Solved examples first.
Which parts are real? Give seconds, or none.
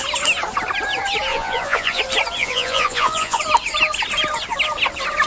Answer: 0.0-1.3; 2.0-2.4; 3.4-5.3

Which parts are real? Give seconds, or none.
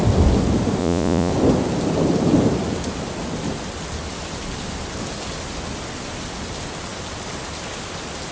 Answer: 0.0-0.8; 1.3-8.3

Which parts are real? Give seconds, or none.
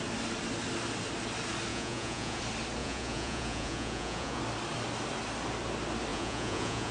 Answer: 0.0-1.7; 2.4-2.8; 4.4-6.1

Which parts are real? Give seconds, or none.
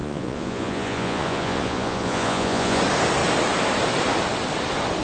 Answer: 2.8-5.0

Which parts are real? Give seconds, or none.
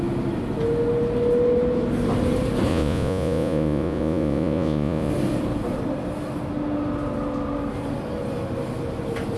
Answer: 0.0-2.7; 5.1-9.4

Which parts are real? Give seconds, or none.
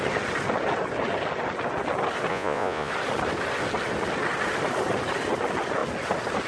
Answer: 0.0-2.3; 2.9-6.5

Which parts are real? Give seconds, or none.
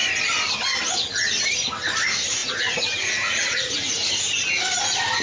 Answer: 0.0-2.4; 4.1-5.2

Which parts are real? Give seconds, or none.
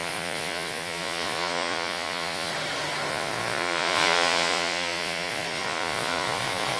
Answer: 2.5-3.1